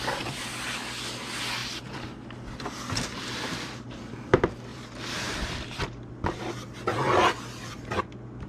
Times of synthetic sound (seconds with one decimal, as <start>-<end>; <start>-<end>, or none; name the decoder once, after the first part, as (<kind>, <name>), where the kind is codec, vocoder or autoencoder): 1.6-4.3 (vocoder, BigVGAN v2); 4.7-6.1